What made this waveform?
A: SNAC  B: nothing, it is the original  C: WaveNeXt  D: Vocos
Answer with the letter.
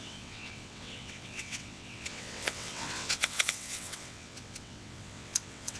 C